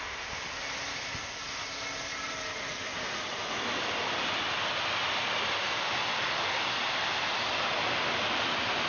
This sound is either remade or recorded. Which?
recorded